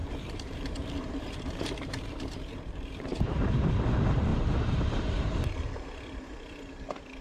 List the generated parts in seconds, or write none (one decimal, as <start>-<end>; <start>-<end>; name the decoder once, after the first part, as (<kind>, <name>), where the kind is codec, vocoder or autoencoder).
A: 0.0-3.8 (vocoder, BigVGAN v2); 4.3-6.0